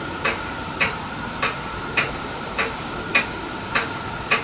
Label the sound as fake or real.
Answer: fake